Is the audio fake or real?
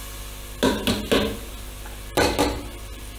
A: real